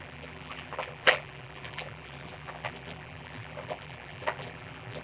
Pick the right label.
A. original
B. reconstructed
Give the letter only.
B